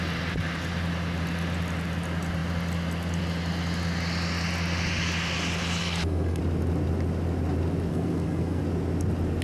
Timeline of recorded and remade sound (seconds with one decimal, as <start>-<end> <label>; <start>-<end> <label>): 0.0-5.8 recorded; 5.8-6.4 remade; 6.4-7.9 recorded; 7.9-8.6 remade; 8.6-9.4 recorded